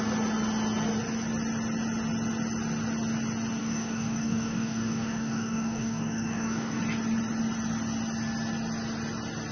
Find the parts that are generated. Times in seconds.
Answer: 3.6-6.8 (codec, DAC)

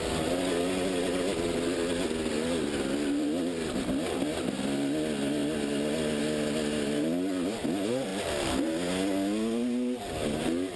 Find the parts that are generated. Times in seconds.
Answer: none

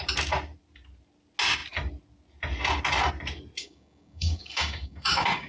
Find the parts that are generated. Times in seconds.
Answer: 3.6-5.5 (codec, DAC)

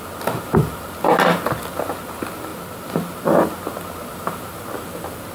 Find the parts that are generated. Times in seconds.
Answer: none